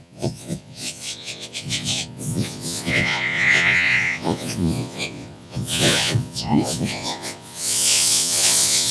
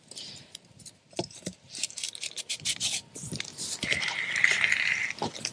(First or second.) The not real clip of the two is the first